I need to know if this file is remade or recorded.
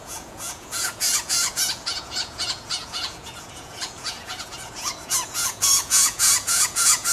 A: remade